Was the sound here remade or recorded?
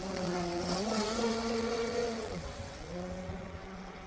remade